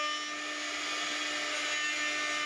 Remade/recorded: recorded